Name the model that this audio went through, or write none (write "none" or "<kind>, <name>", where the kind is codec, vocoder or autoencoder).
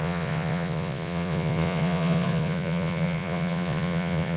vocoder, Vocos